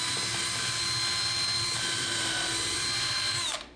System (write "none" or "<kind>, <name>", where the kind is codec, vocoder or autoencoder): vocoder, BigVGAN v2